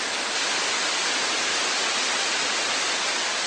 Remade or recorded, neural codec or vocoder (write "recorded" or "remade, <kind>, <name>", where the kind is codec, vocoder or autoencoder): recorded